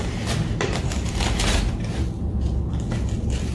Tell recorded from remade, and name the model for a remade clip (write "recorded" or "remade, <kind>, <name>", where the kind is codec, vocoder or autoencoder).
remade, vocoder, BigVGAN v2